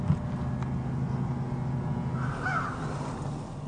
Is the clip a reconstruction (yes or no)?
no